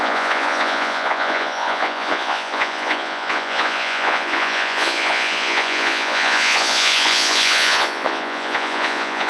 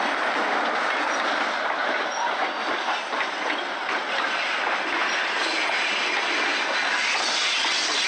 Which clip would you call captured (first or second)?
second